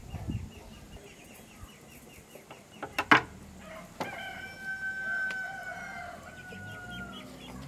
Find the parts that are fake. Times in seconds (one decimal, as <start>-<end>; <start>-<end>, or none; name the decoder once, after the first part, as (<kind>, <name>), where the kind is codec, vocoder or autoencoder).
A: none